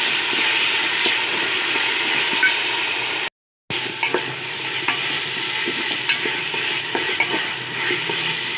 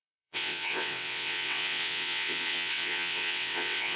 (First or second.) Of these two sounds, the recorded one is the first